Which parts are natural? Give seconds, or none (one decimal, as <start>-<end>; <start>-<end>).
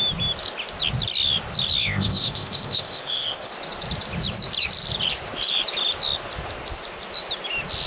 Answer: 0.0-1.8; 3.5-7.9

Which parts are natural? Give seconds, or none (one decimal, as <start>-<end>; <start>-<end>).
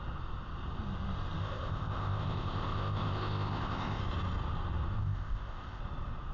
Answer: 0.0-1.4; 4.0-5.0; 5.8-6.3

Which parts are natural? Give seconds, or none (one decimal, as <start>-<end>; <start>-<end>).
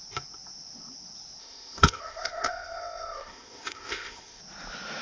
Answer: 0.0-1.4; 4.4-5.0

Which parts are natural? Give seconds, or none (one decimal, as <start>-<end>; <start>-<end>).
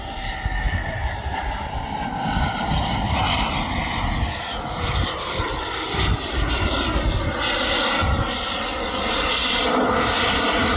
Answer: 0.0-10.8